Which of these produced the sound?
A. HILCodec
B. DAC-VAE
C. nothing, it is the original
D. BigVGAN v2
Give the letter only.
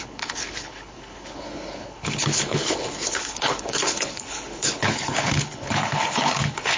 A